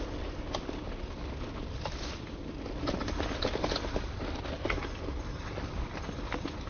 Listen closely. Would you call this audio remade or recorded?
recorded